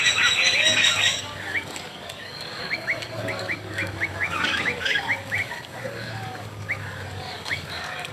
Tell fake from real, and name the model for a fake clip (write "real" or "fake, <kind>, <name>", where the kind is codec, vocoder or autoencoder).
fake, codec, DAC